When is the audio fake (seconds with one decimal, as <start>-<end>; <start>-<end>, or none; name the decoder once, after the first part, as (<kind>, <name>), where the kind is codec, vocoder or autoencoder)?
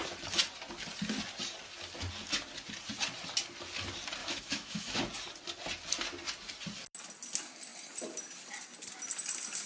4.2-5.0 (autoencoder, DAC-VAE)